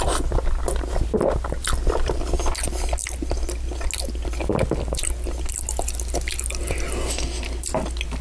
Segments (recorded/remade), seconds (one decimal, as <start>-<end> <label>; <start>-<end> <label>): 0.0-8.2 recorded